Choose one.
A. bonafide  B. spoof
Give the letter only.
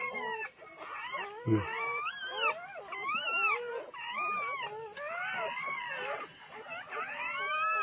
A